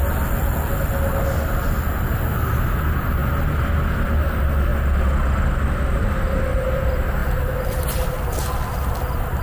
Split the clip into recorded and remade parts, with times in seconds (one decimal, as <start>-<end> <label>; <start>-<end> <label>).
0.0-9.4 recorded